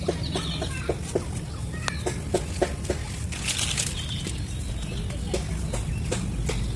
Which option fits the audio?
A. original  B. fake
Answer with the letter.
A